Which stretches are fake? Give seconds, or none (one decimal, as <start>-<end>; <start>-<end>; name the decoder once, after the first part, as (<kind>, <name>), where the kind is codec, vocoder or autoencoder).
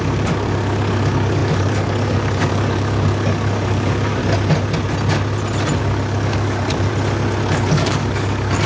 0.0-4.2 (codec, DAC); 5.8-6.9; 7.5-8.7